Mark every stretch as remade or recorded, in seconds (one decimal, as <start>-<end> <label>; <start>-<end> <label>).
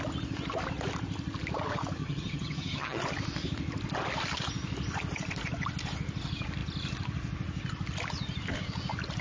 0.0-2.0 recorded; 2.0-3.0 remade; 3.0-9.2 recorded